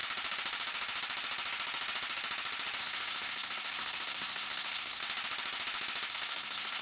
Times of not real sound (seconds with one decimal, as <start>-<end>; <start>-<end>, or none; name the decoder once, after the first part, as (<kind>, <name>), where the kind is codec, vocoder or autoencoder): 2.8-5.0 (codec, SNAC); 6.1-6.8